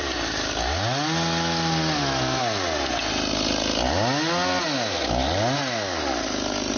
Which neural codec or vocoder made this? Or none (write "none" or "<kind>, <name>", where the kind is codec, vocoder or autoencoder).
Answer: none